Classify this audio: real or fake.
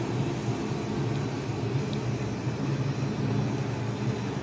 real